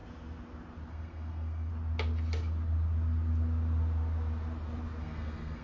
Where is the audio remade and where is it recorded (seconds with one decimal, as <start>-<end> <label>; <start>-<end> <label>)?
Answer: 0.0-0.9 recorded; 0.9-1.7 remade; 1.7-5.0 recorded; 5.0-5.6 remade

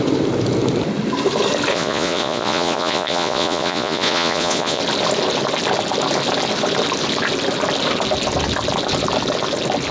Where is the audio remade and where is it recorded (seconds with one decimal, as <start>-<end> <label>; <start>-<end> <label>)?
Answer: 0.0-1.7 recorded; 1.7-4.8 remade; 4.8-9.9 recorded

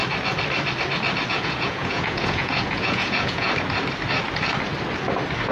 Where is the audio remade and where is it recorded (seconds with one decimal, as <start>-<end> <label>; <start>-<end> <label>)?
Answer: 0.0-1.3 recorded; 1.3-3.5 remade; 3.5-5.5 recorded

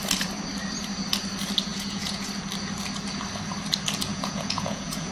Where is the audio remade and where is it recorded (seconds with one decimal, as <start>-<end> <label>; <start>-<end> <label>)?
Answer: 0.0-1.7 recorded; 1.7-2.3 remade; 2.3-4.1 recorded; 4.1-5.1 remade

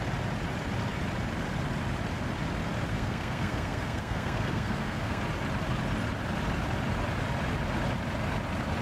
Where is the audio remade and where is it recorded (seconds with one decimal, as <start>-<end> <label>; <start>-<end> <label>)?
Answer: 0.0-2.9 recorded; 2.9-5.2 remade; 5.2-8.8 recorded